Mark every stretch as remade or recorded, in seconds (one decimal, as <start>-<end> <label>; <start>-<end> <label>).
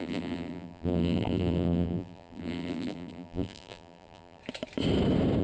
0.0-4.4 remade; 4.4-5.4 recorded